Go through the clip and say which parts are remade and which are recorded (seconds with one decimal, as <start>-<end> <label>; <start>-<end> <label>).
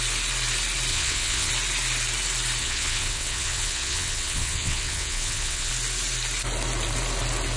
0.0-0.9 recorded; 0.9-1.5 remade; 1.5-2.6 recorded; 2.6-5.7 remade; 5.7-7.6 recorded